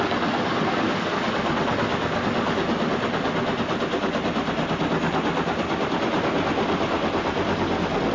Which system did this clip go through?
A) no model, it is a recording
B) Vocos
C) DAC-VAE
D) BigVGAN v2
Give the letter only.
A